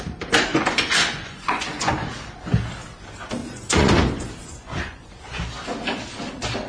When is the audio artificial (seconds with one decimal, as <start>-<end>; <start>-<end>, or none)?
0.5-1.9; 3.4-4.0; 4.4-5.4